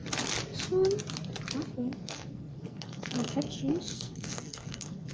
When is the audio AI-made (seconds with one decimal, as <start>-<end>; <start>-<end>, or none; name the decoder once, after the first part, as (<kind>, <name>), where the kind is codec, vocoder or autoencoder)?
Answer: 1.7-5.1 (codec, SNAC)